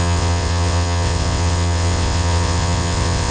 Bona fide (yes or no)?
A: no